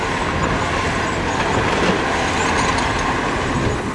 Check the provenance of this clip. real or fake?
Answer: real